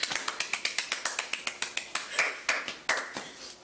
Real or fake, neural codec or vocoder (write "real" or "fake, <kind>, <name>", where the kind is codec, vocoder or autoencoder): real